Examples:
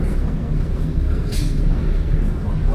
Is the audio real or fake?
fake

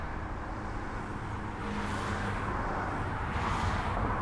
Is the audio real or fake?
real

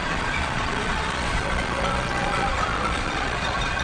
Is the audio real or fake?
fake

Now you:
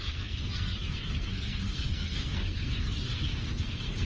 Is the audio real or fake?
fake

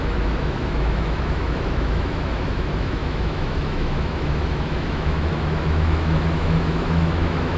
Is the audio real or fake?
fake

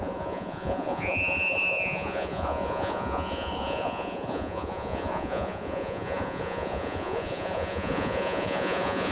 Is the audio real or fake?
fake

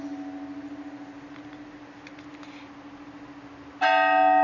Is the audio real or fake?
real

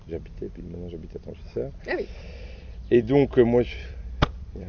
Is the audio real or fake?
fake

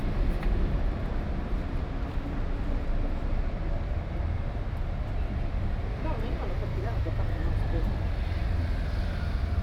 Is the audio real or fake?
real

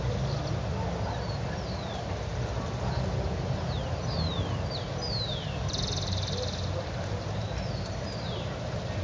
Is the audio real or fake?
real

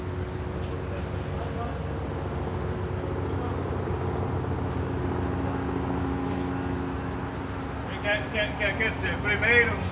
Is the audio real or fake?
real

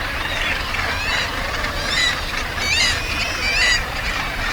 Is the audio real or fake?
fake